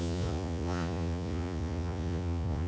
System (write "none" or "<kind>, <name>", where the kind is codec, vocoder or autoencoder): vocoder, Vocos